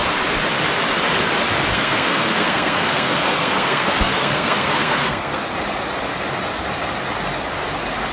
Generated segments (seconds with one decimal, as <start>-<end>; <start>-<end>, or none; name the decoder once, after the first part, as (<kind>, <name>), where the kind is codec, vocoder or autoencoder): 1.7-5.4 (codec, SNAC)